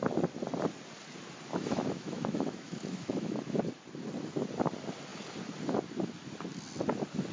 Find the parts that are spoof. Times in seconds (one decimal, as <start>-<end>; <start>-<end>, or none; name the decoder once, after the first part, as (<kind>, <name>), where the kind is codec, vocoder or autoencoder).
1.5-3.6 (autoencoder, DAC-VAE)